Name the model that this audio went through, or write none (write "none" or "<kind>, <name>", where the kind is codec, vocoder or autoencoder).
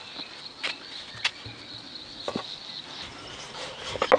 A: none